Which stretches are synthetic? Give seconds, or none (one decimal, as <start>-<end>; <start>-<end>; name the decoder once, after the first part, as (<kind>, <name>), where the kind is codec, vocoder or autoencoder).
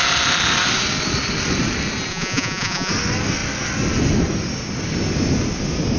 2.1-2.9 (vocoder, Vocos)